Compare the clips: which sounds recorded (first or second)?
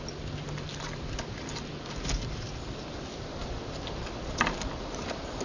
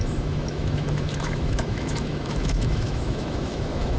first